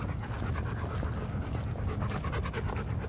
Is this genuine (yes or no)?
yes